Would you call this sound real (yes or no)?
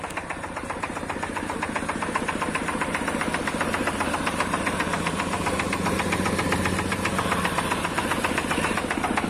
no